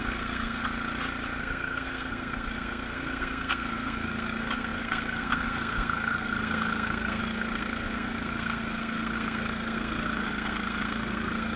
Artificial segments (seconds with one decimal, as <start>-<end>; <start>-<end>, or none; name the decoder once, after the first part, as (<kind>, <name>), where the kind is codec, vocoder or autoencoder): 0.0-0.6 (codec, SNAC); 1.4-11.6